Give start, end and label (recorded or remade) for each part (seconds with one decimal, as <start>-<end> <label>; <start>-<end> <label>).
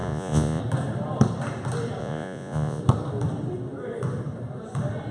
0.0-0.6 remade; 0.6-2.0 recorded; 2.0-2.8 remade; 2.8-5.1 recorded